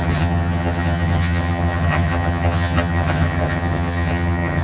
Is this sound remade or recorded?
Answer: remade